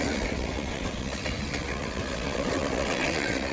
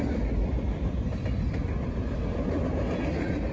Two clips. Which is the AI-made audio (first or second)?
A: first